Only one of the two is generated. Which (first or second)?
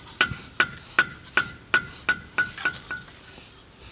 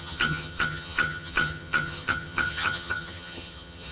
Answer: second